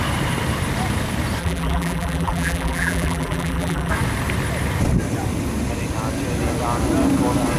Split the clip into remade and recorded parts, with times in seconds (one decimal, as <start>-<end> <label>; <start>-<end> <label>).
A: 0.0-1.4 recorded; 1.4-3.9 remade; 3.9-7.6 recorded